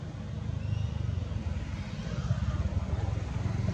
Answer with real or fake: real